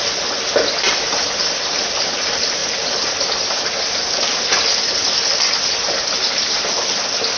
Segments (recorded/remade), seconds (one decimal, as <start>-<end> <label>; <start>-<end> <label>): 0.0-7.4 recorded